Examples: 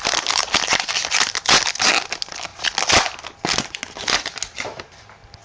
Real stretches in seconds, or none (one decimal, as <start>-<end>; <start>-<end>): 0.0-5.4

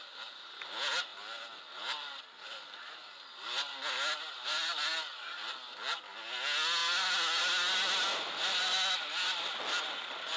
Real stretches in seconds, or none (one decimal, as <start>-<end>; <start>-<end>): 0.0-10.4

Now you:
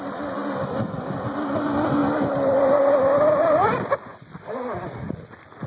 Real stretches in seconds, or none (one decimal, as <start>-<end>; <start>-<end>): 0.0-5.7

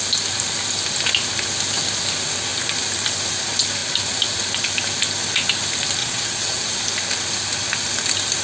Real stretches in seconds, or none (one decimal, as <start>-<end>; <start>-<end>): 0.0-6.0; 6.8-8.4